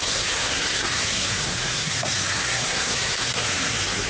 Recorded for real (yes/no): no